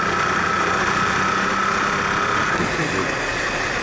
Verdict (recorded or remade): recorded